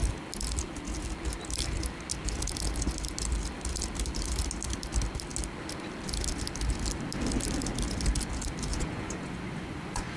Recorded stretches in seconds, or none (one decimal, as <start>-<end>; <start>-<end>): 0.0-8.7